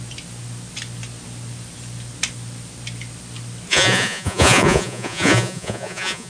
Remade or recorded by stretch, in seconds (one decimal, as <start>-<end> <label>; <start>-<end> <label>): 0.0-3.7 recorded; 3.7-6.3 remade